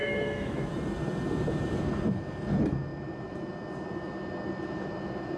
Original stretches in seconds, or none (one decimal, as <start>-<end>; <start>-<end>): 0.7-5.4

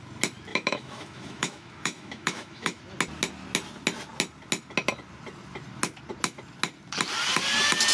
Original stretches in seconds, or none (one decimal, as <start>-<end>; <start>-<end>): 0.0-0.5; 2.8-7.9

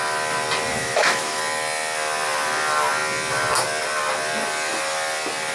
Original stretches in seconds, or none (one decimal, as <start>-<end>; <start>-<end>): 0.0-0.7; 1.4-5.5

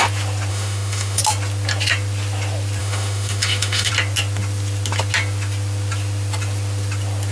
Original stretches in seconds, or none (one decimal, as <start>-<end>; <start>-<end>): 0.0-0.5; 1.2-2.8; 3.9-7.3